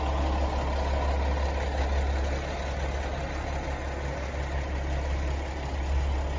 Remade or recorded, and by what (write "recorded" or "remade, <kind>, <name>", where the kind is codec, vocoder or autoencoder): recorded